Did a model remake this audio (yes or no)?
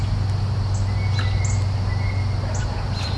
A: no